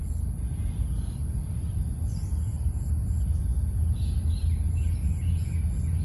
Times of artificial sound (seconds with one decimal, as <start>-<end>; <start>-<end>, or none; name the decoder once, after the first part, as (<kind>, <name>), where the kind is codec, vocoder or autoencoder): none